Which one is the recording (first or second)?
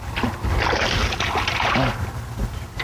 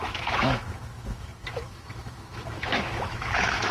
first